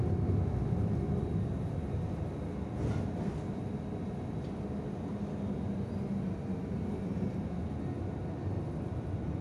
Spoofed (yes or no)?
no